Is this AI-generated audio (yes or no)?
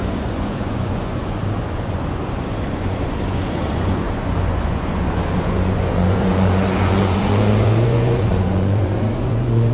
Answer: yes